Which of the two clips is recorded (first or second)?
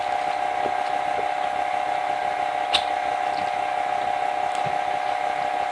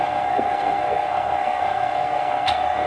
first